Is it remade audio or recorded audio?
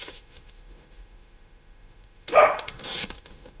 remade